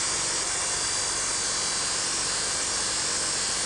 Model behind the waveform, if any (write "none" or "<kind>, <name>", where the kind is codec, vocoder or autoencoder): none